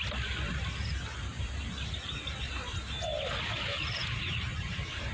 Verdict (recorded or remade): recorded